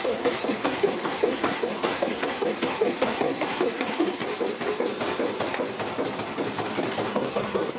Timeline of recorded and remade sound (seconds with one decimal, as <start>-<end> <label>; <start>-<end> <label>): 0.0-4.2 remade; 4.2-7.1 recorded; 7.1-7.8 remade